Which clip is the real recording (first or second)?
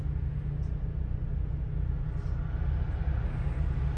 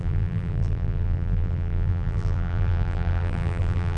first